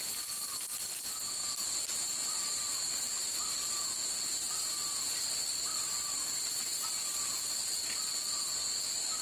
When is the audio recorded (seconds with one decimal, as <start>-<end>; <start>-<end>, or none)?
0.0-1.4; 4.3-9.2